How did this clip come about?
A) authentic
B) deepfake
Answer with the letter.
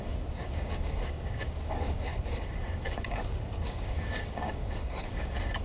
B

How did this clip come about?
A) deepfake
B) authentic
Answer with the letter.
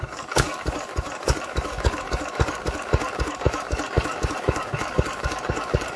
A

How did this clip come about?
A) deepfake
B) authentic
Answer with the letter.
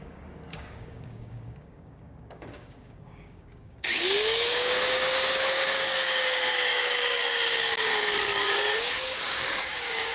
A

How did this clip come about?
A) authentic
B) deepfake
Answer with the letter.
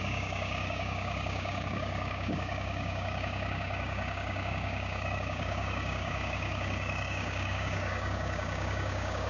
B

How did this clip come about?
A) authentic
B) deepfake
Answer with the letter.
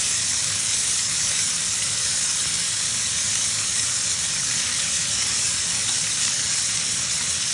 B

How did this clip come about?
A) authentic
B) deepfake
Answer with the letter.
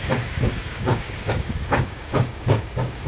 B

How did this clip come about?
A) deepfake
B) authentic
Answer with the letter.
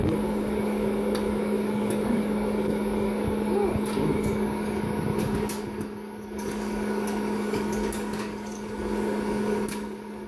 A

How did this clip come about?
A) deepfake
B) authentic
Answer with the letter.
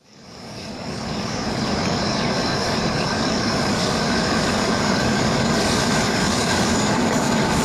A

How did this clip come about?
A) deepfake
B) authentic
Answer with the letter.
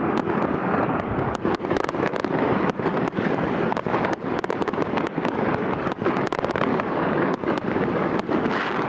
A